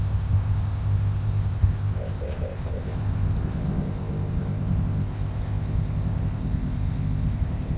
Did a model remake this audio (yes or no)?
yes